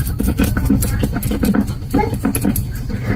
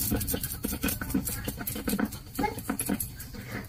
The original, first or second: first